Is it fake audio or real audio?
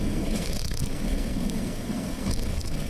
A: fake